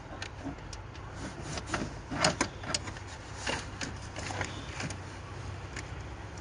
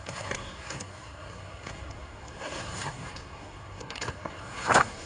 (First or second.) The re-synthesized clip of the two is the second